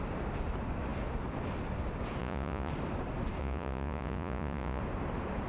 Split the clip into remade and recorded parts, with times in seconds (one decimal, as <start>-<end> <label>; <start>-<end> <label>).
0.0-2.2 recorded; 2.2-2.7 remade; 2.7-3.4 recorded; 3.4-4.8 remade; 4.8-5.5 recorded